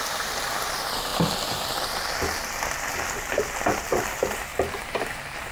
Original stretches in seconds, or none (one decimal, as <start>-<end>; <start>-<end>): 0.0-4.5